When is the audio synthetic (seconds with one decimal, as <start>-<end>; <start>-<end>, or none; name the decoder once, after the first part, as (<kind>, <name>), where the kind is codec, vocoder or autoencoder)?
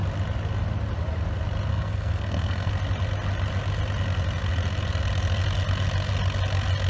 1.7-2.7 (codec, SNAC)